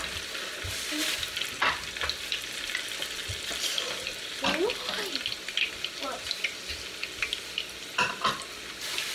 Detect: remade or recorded recorded